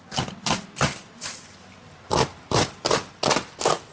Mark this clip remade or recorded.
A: recorded